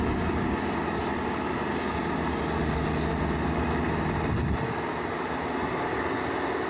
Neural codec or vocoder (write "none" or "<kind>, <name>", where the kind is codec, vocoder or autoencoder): none